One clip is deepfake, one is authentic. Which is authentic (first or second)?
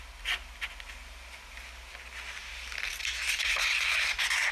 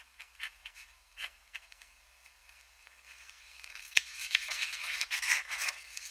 first